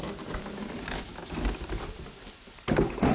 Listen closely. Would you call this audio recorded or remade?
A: recorded